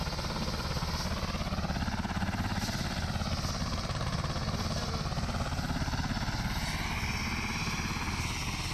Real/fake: real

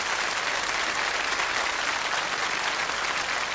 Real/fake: real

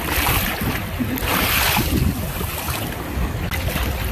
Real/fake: real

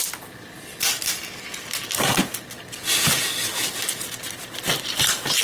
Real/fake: real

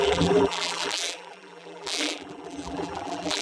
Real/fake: fake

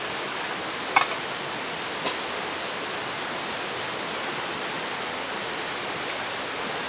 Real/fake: real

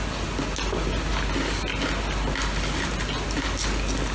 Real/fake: real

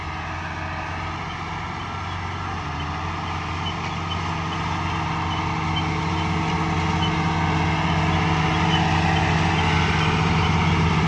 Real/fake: real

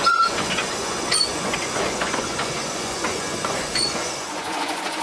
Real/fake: fake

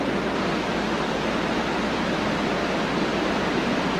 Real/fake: real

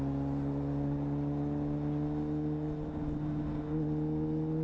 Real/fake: real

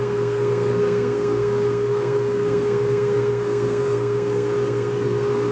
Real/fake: fake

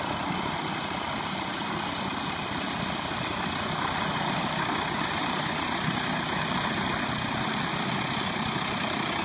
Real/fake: real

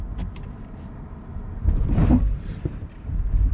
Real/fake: real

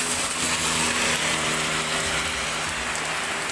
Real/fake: real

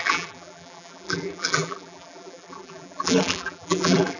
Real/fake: fake